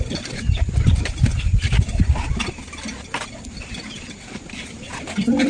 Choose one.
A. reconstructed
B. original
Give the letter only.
B